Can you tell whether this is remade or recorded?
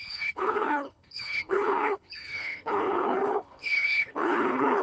remade